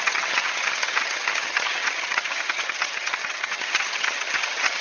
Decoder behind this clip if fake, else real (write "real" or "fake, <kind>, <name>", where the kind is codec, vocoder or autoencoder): fake, vocoder, HiFi-GAN